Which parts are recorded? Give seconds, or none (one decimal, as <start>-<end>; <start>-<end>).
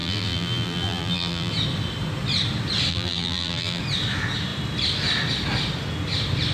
1.5-2.9; 3.8-6.5